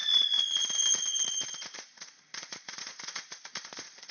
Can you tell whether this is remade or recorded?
remade